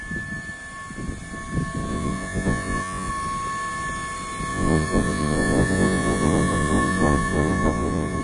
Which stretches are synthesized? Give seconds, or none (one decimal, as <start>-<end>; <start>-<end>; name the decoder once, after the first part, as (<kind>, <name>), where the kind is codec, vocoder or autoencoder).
1.9-3.1 (vocoder, Vocos); 4.5-8.2